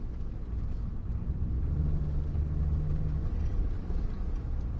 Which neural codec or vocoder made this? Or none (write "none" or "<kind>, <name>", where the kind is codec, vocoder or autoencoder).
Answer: none